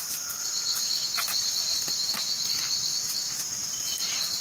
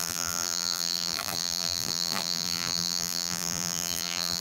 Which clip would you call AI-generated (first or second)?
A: second